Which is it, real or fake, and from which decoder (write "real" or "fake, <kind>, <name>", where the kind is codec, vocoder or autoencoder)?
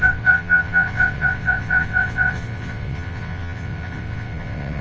fake, vocoder, WaveNeXt